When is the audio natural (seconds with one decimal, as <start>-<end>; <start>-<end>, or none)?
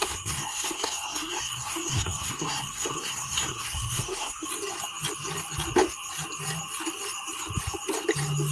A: 4.5-8.5